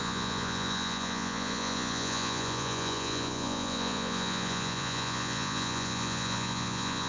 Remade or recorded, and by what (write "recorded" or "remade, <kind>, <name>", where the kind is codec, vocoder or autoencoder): remade, vocoder, Vocos